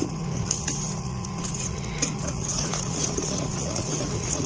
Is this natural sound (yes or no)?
no